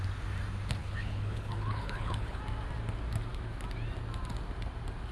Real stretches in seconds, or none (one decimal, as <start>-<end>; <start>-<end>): 0.0-0.8; 2.4-5.1

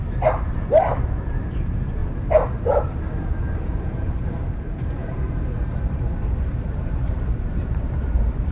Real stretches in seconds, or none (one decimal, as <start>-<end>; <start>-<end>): 2.0-2.6

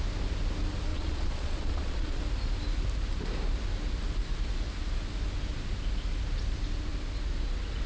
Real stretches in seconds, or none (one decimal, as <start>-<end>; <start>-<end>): 0.0-0.9; 2.2-7.9